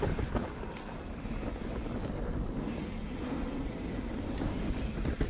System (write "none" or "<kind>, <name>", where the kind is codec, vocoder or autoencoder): none